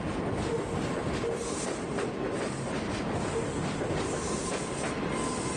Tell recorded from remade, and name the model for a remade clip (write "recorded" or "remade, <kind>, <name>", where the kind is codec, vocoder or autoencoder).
recorded